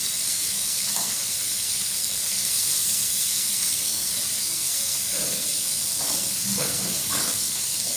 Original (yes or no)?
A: no